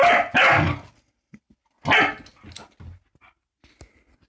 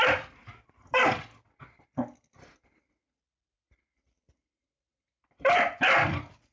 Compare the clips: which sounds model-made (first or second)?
second